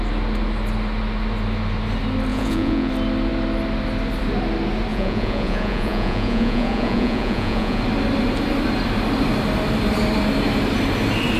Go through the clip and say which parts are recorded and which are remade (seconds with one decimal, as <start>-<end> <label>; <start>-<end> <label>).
0.0-2.3 recorded; 2.3-2.9 remade; 2.9-4.9 recorded; 4.9-7.8 remade; 7.8-11.4 recorded